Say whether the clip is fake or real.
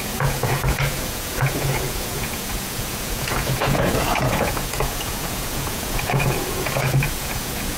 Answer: fake